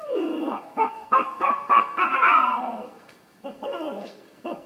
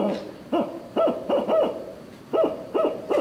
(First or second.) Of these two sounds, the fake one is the first